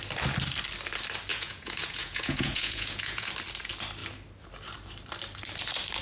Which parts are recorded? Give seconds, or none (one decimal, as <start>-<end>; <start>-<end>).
0.0-1.3; 3.3-6.0